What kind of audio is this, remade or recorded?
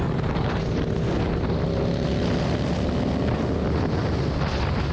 recorded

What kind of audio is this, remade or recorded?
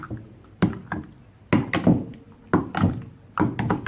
recorded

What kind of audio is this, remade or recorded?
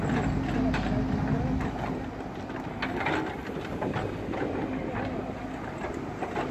recorded